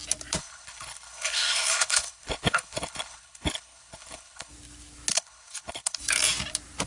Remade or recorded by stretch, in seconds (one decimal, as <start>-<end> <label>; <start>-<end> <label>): 0.0-0.4 recorded; 0.4-4.5 remade; 4.5-5.1 recorded; 5.1-6.0 remade; 6.0-6.9 recorded